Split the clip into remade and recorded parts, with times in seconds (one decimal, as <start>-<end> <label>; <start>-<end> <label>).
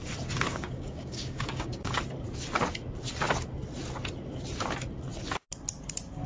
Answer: 0.0-0.5 recorded; 0.5-2.0 remade; 2.0-6.3 recorded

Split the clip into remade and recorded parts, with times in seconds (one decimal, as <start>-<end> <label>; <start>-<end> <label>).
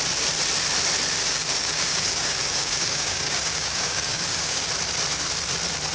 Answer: 0.0-1.2 recorded; 1.2-4.7 remade; 4.7-5.9 recorded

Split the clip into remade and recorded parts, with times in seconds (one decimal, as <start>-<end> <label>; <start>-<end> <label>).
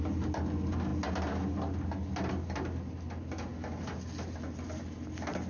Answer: 0.0-5.5 recorded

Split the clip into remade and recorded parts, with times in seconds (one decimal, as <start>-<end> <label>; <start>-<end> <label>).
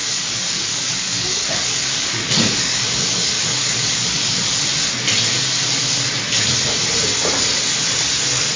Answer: 0.0-4.6 remade; 4.6-8.6 recorded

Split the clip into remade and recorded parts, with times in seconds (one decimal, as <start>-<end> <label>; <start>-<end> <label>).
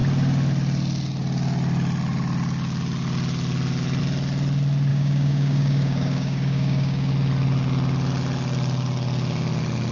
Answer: 0.0-4.9 recorded; 4.9-7.1 remade; 7.1-9.9 recorded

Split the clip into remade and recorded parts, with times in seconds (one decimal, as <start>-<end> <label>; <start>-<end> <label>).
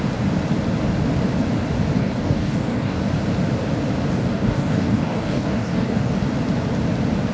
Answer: 0.0-2.0 recorded; 2.0-3.0 remade; 3.0-4.1 recorded; 4.1-6.1 remade; 6.1-7.3 recorded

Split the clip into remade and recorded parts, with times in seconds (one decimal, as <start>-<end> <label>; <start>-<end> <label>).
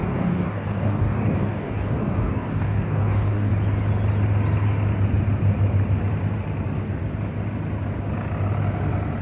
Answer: 0.0-3.5 remade; 3.5-9.2 recorded